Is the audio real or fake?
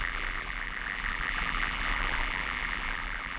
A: fake